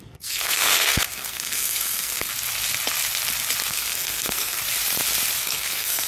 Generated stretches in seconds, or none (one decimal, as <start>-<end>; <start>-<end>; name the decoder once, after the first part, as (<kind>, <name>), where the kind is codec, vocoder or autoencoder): 0.0-2.3 (codec, SNAC); 3.7-4.6; 5.4-6.1

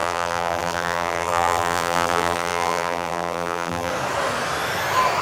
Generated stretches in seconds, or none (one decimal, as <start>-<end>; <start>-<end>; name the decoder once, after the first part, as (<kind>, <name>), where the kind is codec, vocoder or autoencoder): 0.0-3.9 (vocoder, BigVGAN v2)

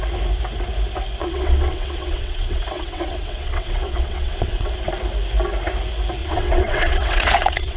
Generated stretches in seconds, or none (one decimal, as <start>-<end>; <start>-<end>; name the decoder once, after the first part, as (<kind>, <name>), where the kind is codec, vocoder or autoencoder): 1.2-4.7 (vocoder, WaveNeXt); 6.2-7.8

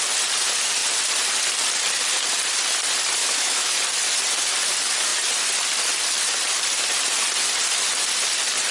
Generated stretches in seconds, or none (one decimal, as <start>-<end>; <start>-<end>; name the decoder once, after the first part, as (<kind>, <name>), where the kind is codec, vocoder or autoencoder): 3.2-3.8 (autoencoder, DAC-VAE)

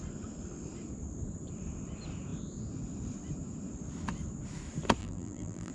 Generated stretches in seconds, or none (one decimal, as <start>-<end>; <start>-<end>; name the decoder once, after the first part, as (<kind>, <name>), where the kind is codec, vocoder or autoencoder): 5.0-5.7 (vocoder, BigVGAN v2)